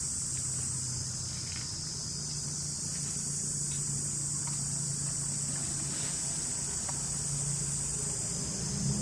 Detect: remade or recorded recorded